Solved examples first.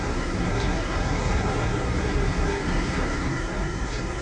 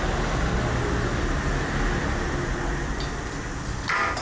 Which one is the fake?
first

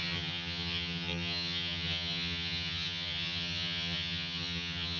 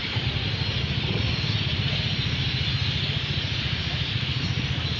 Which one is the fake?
first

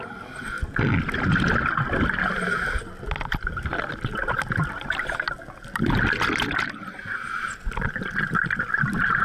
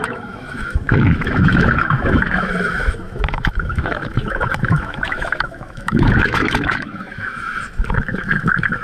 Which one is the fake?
second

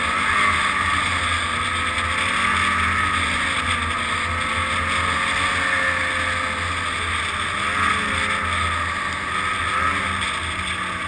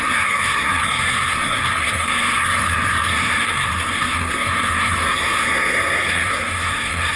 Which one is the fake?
second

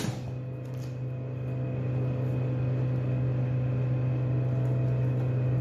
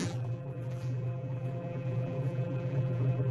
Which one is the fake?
second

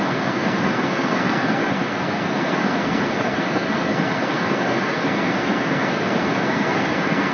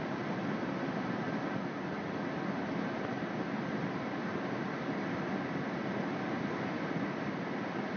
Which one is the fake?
first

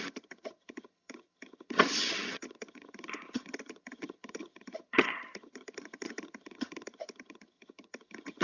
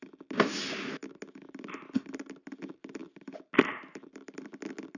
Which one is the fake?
first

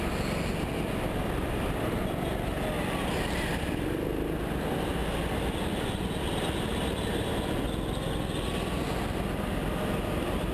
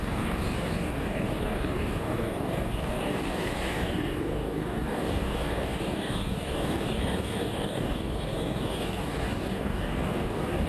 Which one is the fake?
second